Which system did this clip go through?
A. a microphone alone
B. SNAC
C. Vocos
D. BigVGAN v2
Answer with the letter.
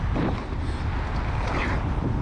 A